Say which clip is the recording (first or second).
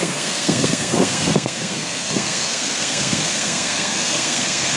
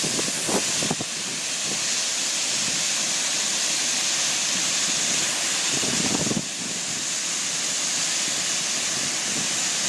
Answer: second